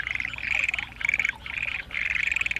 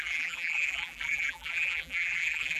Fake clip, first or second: second